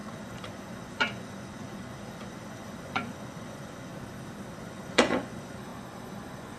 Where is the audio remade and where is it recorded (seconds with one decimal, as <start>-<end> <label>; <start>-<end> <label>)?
0.0-3.9 remade; 3.9-4.6 recorded; 4.6-6.6 remade